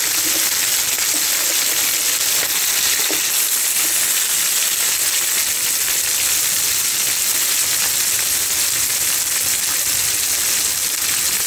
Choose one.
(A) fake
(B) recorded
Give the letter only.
B